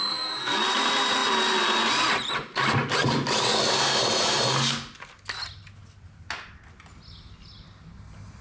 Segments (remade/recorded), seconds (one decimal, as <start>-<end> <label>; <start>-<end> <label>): 0.0-0.6 remade; 0.6-8.4 recorded